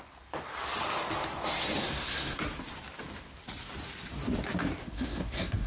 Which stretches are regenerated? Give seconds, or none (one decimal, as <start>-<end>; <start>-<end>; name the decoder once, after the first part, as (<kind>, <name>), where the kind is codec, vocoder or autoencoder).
1.8-2.4 (codec, SNAC); 4.8-5.7